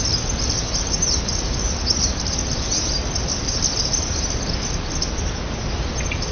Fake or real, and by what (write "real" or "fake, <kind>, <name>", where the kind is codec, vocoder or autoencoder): real